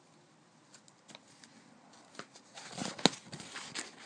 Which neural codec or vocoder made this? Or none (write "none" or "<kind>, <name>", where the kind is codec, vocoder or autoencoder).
none